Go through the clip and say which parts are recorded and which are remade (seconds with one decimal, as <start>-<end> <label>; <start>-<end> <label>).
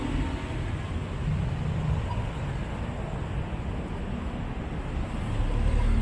0.0-6.0 recorded